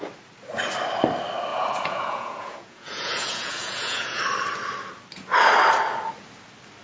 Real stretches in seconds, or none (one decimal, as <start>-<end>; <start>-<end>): 0.0-1.5; 4.2-6.8

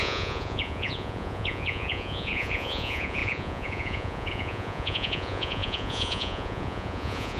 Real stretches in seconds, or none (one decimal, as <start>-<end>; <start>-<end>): none

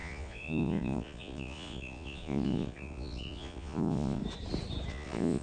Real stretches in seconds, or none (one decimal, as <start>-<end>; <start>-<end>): 4.2-4.9

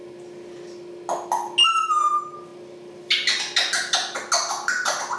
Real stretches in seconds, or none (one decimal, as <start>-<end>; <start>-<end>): 0.0-5.2